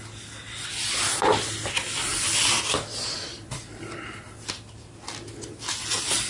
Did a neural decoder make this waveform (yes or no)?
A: no